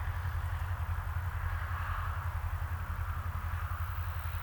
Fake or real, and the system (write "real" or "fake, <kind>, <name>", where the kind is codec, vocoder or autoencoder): real